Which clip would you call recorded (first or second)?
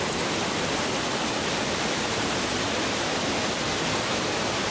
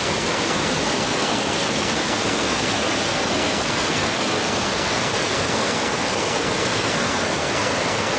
first